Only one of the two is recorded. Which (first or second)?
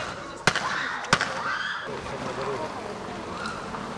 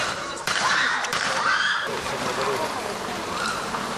first